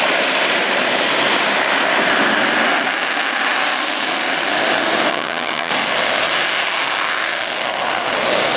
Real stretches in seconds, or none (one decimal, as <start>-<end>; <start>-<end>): 0.0-5.1; 5.7-8.6